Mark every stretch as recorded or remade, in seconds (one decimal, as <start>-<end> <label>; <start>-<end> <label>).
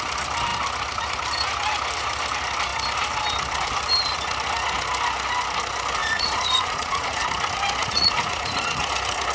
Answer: 0.0-6.0 recorded; 6.0-7.2 remade; 7.2-7.8 recorded; 7.8-8.9 remade; 8.9-9.3 recorded